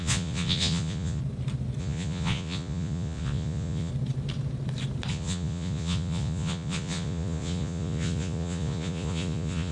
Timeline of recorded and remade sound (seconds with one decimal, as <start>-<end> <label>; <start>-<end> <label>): 0.0-1.2 remade; 1.2-1.8 recorded; 1.8-3.9 remade; 3.9-5.1 recorded; 5.1-9.7 remade